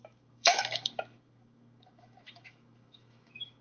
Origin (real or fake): fake